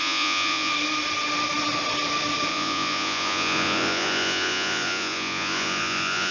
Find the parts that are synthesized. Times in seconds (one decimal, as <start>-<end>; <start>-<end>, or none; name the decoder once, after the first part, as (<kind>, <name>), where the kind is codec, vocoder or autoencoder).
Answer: 0.0-0.7 (vocoder, Vocos); 2.5-6.3